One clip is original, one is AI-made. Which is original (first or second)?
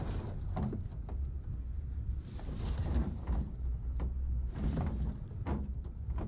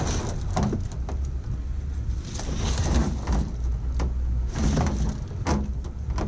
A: second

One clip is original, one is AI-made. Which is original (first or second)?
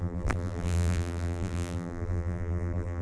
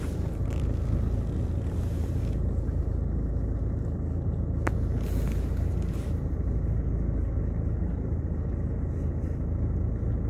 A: second